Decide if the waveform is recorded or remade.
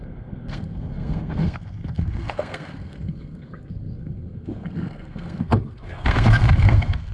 remade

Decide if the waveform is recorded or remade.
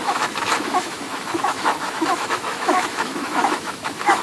remade